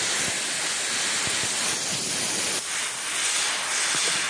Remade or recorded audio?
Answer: recorded